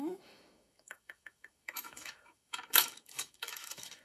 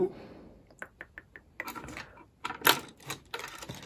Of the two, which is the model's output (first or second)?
first